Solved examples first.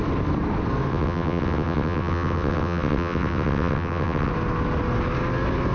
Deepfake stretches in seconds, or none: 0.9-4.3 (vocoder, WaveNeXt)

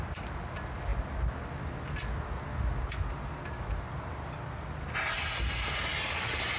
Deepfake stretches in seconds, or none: none

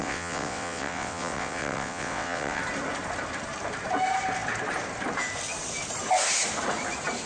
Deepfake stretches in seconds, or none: 0.0-2.6 (vocoder, WaveNeXt)

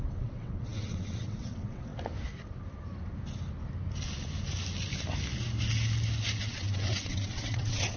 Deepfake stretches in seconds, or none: 0.0-1.9 (vocoder, WaveNeXt); 6.4-8.0

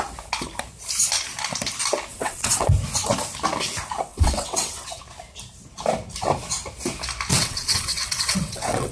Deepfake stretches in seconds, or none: 2.1-2.7 (vocoder, WaveNeXt); 4.1-5.0; 7.3-8.9